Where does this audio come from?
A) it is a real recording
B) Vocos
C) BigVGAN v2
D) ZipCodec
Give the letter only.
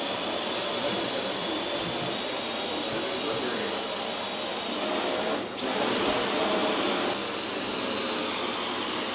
A